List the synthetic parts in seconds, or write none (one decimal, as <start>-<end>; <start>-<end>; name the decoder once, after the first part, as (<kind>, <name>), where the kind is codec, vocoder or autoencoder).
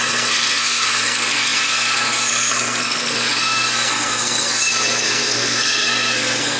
0.0-6.6 (codec, SNAC)